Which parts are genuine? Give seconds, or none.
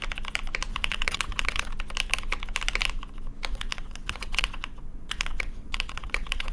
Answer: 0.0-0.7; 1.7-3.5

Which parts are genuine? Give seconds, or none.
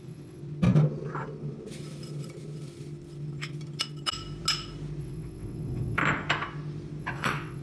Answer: 0.4-5.0; 6.0-7.0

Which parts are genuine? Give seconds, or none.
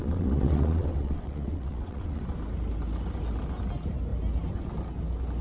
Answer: 2.2-5.4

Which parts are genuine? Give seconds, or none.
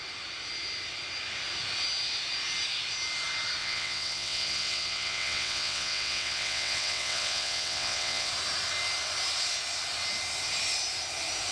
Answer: 0.0-3.6; 8.3-11.5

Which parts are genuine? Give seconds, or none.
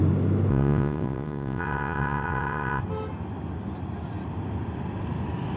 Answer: 0.0-0.5; 2.8-5.6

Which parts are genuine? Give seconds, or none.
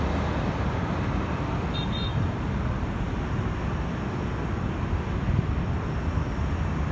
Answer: 0.0-6.9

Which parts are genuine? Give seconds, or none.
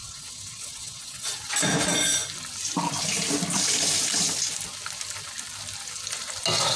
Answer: 1.5-6.8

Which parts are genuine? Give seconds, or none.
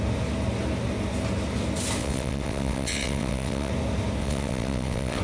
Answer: 0.0-2.0; 3.7-4.2